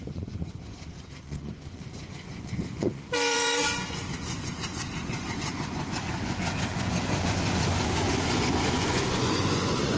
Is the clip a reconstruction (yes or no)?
yes